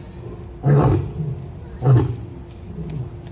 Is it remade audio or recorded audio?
recorded